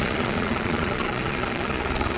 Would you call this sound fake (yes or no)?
yes